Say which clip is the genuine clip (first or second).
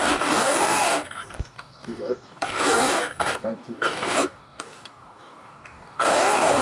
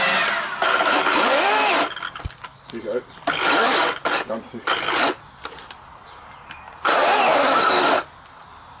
second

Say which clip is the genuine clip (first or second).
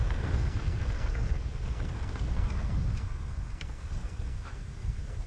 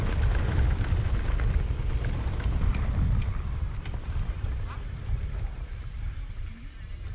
second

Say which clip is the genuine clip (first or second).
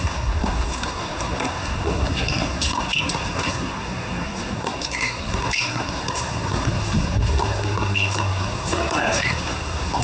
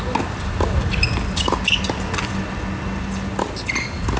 second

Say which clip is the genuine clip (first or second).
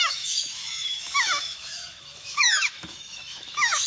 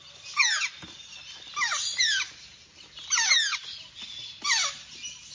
second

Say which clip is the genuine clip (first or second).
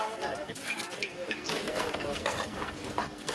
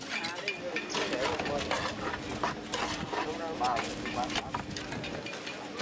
second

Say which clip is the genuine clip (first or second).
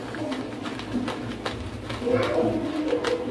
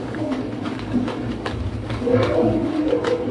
first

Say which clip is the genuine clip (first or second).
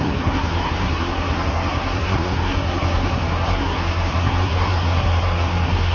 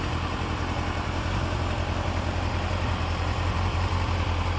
second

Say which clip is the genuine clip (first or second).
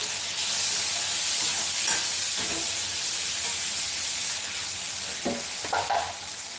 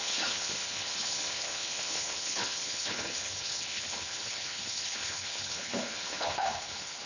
first